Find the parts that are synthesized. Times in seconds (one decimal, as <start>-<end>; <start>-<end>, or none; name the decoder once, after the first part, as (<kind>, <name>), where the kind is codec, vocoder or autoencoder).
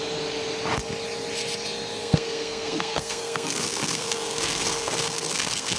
2.0-5.8 (codec, SNAC)